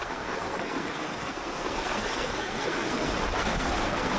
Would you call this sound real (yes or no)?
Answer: no